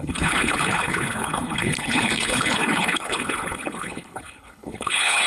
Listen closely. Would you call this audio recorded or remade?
remade